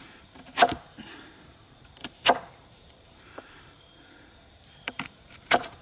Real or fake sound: fake